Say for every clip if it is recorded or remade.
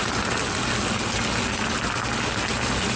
recorded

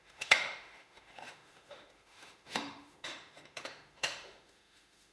remade